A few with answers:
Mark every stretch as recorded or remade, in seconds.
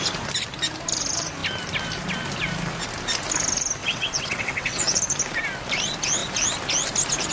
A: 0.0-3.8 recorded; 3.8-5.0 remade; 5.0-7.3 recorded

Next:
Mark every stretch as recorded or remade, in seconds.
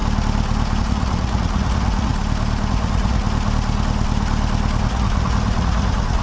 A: 0.0-0.8 recorded; 0.8-2.1 remade; 2.1-2.7 recorded; 2.7-3.2 remade; 3.2-4.9 recorded; 4.9-6.2 remade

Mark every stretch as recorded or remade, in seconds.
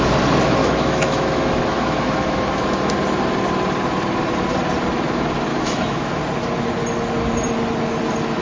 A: 0.0-0.6 recorded; 0.6-2.9 remade; 2.9-5.5 recorded; 5.5-6.2 remade; 6.2-8.4 recorded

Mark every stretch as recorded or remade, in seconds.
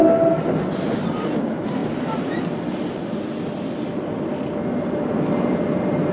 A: 0.0-6.1 recorded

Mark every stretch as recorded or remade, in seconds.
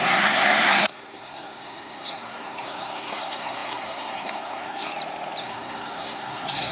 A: 0.0-4.9 remade; 4.9-5.4 recorded; 5.4-6.7 remade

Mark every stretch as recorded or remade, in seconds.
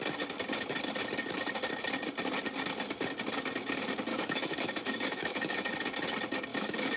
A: 0.0-4.1 recorded; 4.1-5.7 remade; 5.7-6.5 recorded; 6.5-7.0 remade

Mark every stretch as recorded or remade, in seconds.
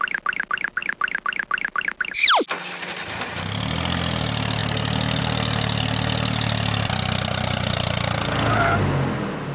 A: 0.0-9.5 recorded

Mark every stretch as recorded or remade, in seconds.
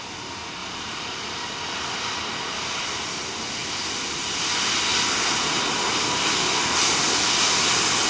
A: 0.0-0.6 recorded; 0.6-1.7 remade; 1.7-8.1 recorded